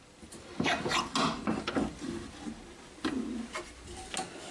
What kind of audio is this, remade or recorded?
recorded